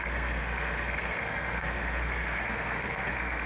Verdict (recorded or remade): remade